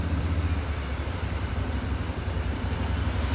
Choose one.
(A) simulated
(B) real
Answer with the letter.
A